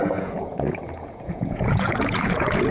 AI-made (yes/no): yes